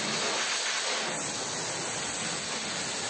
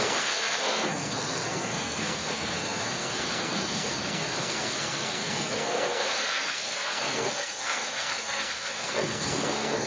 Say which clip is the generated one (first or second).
second